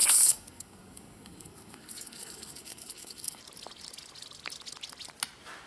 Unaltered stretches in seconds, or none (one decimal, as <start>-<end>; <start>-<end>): 3.4-5.7